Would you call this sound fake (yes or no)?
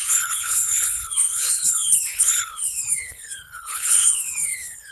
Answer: yes